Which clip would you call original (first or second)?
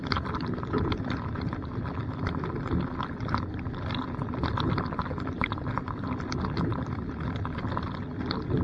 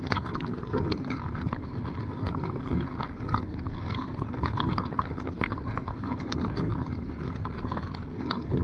first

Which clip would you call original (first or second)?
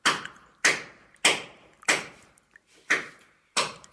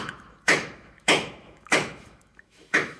first